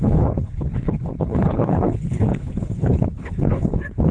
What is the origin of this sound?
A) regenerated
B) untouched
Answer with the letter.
A